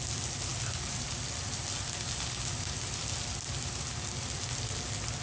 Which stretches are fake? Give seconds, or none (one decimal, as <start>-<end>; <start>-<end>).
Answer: none